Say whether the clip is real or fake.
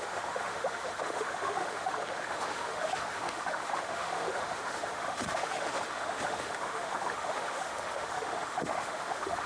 fake